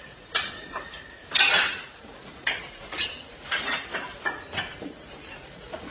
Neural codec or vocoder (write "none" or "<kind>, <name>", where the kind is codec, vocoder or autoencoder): vocoder, Vocos